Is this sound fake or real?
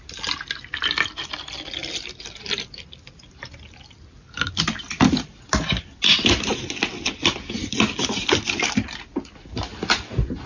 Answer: real